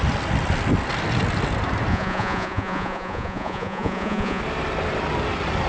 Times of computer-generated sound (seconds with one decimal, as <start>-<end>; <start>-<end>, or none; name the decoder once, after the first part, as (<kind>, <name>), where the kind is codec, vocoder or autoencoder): 1.9-4.4 (vocoder, Vocos)